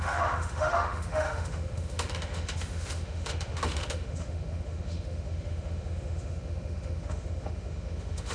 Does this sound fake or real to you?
fake